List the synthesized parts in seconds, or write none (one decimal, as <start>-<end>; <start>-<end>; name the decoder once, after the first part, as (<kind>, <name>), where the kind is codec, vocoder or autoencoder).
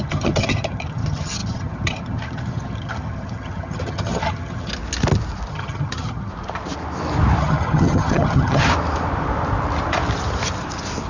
0.0-4.7 (vocoder, HiFi-GAN); 5.5-6.3; 7.4-8.6